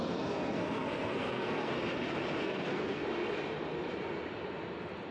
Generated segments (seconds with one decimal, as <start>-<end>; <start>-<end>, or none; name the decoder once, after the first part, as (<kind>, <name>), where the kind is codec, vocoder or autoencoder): 0.0-1.7 (codec, SNAC); 2.4-3.0

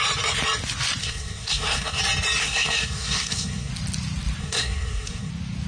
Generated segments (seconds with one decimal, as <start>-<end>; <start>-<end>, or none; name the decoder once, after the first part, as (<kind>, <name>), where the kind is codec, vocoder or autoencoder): 1.0-2.0 (codec, SNAC); 2.4-3.7; 4.4-5.3

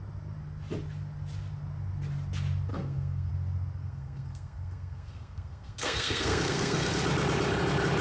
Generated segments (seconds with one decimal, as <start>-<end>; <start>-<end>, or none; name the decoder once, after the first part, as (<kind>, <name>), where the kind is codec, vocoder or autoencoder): 2.7-3.3 (codec, SNAC); 3.8-6.9

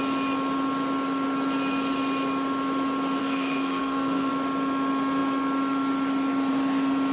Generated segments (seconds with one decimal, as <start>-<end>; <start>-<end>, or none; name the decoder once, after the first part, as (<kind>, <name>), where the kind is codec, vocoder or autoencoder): 3.2-4.3 (codec, SNAC)

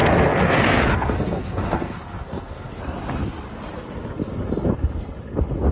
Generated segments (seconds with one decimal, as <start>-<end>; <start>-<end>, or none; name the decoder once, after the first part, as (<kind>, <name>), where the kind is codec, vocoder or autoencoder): 0.0-2.8 (codec, SNAC)

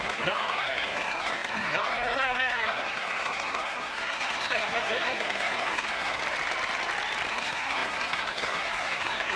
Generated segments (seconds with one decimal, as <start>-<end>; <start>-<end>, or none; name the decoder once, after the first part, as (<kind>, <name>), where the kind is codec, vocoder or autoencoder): 0.0-6.2 (codec, SNAC); 7.3-9.4

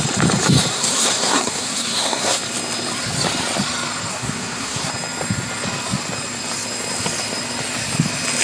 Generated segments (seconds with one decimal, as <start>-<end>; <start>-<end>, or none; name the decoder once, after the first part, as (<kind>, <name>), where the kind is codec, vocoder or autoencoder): 0.7-2.4 (codec, SNAC); 4.1-4.9

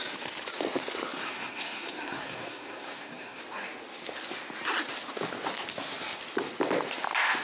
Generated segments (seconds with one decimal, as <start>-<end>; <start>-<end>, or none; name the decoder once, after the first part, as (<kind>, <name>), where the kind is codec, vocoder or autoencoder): 1.2-3.4 (codec, SNAC)